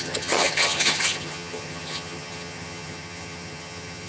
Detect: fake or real fake